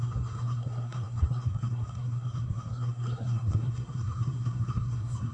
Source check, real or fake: fake